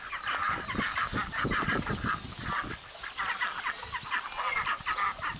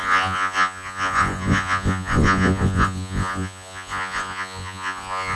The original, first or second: first